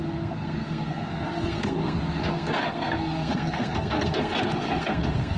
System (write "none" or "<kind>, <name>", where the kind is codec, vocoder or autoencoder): codec, SNAC